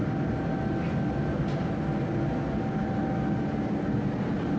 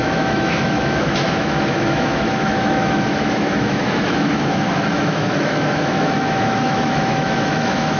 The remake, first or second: second